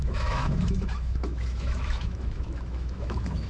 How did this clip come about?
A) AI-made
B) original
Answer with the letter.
A